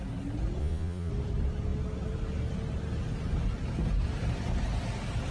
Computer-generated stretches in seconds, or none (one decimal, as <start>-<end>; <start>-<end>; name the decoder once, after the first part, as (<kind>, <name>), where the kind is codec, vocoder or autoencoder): 0.6-1.1 (vocoder, Vocos)